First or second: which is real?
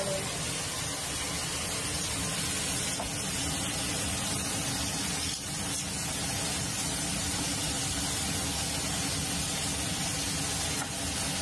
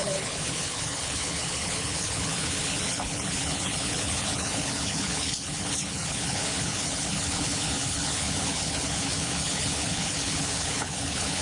first